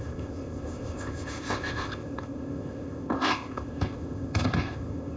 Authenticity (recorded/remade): remade